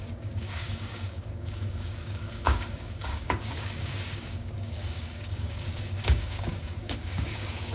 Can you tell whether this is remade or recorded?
remade